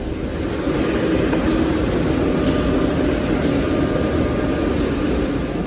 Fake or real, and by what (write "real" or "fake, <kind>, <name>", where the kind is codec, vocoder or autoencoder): real